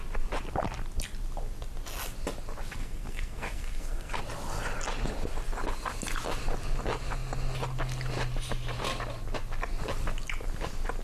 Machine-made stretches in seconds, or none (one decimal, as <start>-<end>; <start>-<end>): 2.8-4.2